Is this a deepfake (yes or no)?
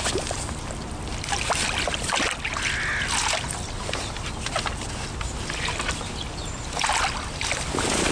no